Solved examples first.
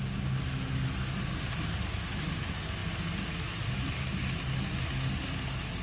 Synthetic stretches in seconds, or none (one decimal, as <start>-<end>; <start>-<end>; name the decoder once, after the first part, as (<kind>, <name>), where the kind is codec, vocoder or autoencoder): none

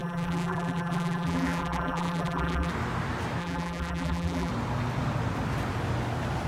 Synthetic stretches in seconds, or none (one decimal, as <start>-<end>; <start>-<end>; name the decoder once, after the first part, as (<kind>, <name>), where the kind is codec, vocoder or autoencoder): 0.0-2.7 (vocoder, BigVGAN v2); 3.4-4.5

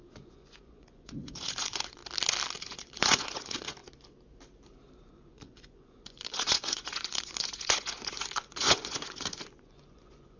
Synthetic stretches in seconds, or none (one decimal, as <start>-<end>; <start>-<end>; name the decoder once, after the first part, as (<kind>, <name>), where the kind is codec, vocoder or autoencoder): 0.0-2.0 (vocoder, Vocos); 2.6-3.8; 5.0-10.4

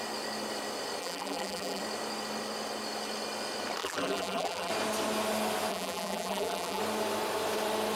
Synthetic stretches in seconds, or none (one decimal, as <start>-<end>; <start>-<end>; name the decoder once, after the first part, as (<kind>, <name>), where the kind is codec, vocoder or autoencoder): 1.0-1.8 (vocoder, BigVGAN v2); 3.8-4.7; 5.7-6.8

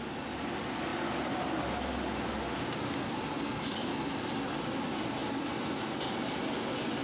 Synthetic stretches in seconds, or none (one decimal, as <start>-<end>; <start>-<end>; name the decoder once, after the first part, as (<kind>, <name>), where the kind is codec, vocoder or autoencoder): none

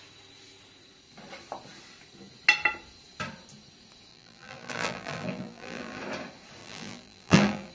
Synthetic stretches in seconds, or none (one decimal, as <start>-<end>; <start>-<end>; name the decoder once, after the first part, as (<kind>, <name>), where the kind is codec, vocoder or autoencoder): 4.1-6.0 (vocoder, BigVGAN v2); 6.6-7.7

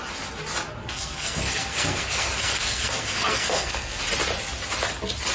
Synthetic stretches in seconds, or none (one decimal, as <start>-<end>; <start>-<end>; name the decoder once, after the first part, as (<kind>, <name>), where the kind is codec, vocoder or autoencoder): 0.8-4.0 (codec, SNAC)

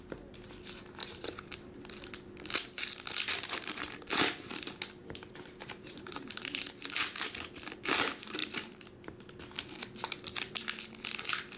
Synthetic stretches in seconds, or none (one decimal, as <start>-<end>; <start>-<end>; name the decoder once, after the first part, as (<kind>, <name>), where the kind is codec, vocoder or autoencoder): 1.0-1.8 (vocoder, BigVGAN v2); 5.0-7.4; 8.4-9.2